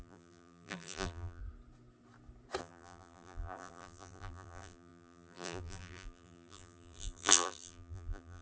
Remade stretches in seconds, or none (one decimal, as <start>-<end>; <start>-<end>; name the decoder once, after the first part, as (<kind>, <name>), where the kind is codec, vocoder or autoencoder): 0.0-1.4 (vocoder, BigVGAN v2); 2.6-8.4